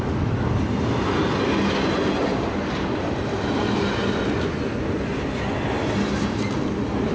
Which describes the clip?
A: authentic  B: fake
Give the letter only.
A